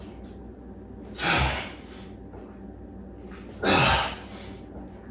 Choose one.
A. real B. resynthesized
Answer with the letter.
A